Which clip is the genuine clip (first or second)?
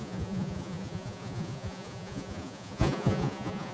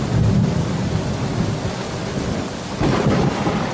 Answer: second